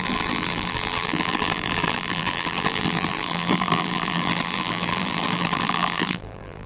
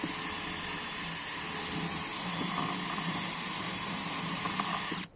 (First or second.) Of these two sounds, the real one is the second